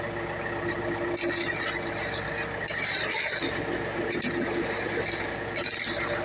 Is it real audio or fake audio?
real